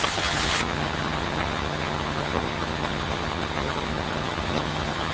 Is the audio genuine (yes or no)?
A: no